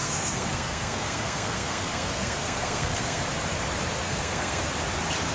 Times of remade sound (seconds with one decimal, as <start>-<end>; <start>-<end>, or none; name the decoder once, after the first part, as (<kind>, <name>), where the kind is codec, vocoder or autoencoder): 0.0-3.2 (codec, SNAC); 4.0-4.6